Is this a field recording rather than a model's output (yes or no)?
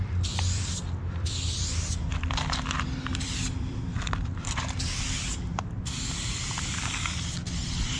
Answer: no